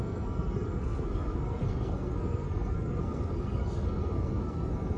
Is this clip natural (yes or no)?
no